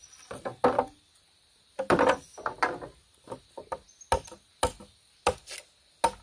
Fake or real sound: real